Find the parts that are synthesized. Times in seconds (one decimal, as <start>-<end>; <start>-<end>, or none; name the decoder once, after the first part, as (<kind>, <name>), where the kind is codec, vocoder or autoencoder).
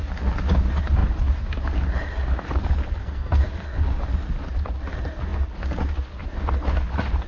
3.0-3.5 (codec, SNAC)